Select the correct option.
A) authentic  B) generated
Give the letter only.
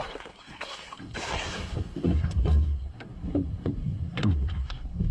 B